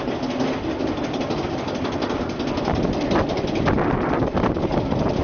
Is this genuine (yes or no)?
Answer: yes